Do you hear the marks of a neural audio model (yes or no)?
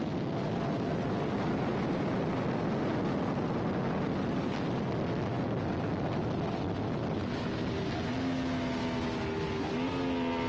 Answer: no